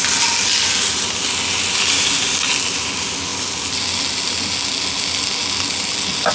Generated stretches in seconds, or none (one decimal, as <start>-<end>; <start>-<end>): none